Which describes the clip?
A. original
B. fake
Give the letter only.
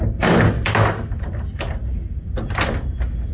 A